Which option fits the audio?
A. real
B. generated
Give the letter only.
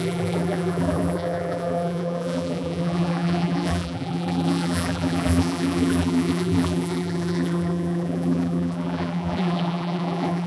B